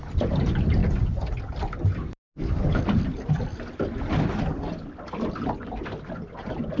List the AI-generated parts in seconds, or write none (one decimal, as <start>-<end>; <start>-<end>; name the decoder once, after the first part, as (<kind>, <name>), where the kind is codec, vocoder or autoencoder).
none

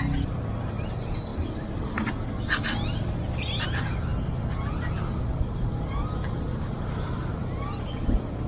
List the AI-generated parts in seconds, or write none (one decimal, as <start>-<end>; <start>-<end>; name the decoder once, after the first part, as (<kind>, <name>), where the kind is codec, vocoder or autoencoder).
none

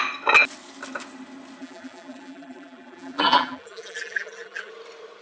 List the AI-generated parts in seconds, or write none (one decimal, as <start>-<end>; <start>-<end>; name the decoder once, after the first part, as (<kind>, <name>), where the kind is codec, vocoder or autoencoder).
1.6-4.7 (vocoder, BigVGAN v2)